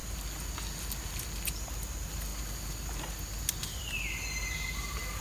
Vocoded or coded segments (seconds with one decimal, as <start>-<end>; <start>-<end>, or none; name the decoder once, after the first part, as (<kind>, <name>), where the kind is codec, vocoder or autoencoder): none